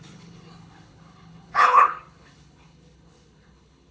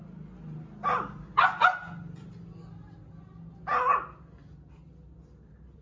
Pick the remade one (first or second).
first